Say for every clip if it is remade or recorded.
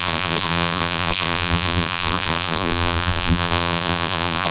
remade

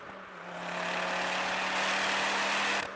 recorded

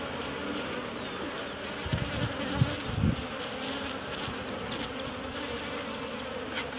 recorded